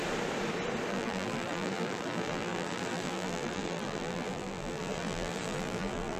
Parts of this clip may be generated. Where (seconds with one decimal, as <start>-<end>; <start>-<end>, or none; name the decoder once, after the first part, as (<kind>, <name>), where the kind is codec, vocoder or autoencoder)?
0.9-6.2 (vocoder, BigVGAN v2)